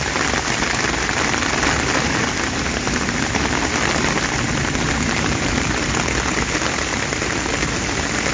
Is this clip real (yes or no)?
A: yes